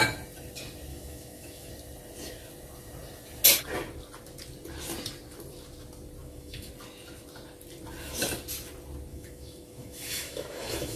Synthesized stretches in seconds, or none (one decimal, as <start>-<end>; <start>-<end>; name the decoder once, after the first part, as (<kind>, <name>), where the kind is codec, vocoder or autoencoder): 0.9-1.7 (autoencoder, DAC-VAE); 6.2-6.7; 9.1-11.0